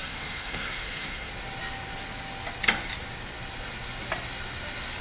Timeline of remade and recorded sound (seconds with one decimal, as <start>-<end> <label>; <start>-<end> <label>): 0.0-1.3 remade; 1.3-5.0 recorded